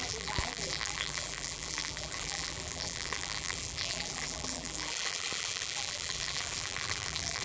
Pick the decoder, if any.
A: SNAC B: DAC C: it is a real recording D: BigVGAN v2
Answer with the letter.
D